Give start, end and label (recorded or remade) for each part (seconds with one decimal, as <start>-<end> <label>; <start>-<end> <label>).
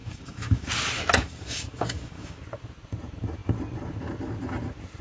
0.0-0.7 remade; 0.7-1.2 recorded; 1.2-2.4 remade; 2.4-5.0 recorded